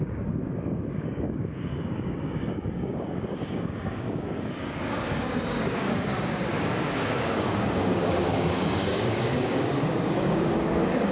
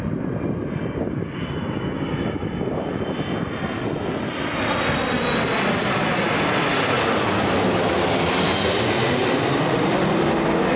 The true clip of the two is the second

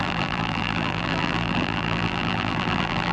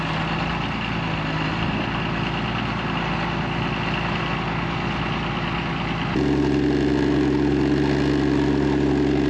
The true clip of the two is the second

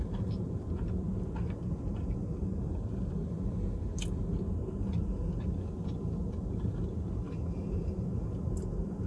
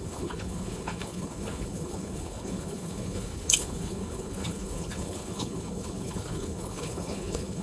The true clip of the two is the first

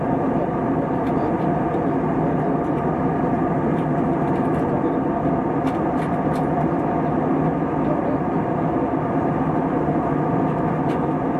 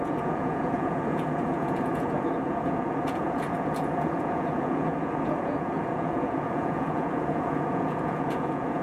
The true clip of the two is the first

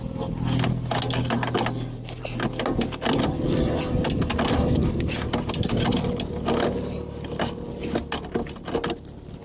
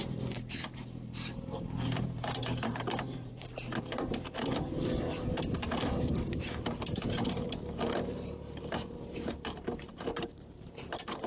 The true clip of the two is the first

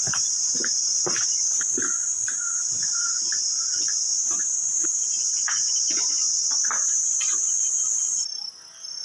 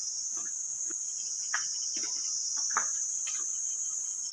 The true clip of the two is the second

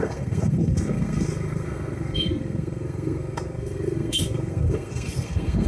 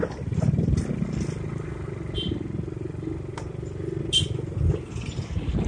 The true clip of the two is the second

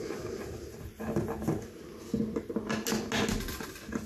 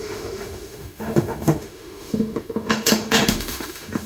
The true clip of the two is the first